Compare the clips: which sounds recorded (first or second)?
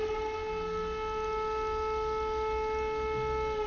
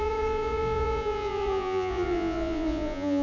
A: first